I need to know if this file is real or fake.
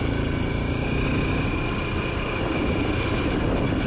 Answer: real